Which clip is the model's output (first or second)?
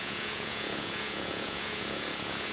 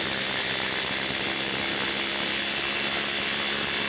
first